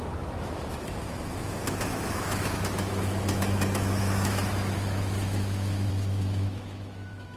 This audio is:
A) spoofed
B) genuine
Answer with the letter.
A